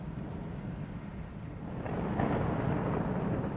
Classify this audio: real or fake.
real